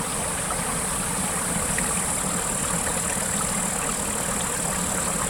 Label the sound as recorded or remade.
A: recorded